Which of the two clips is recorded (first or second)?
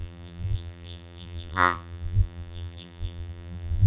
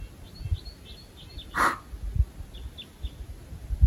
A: second